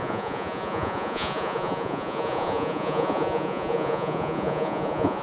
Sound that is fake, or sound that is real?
fake